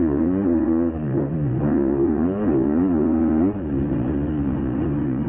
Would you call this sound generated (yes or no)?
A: yes